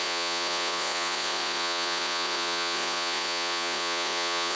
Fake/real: fake